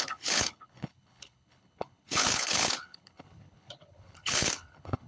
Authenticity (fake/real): fake